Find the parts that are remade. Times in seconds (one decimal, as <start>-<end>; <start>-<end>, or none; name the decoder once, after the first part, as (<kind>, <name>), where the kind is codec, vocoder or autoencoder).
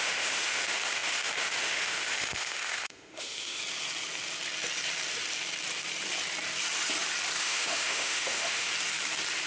0.0-3.6 (autoencoder, DAC-VAE); 7.4-8.7